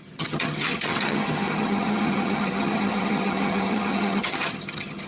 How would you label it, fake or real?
fake